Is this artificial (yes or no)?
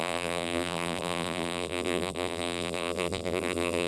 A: yes